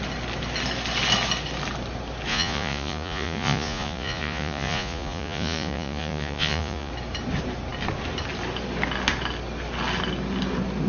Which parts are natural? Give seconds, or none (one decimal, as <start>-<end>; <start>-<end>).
0.0-2.3; 6.9-10.9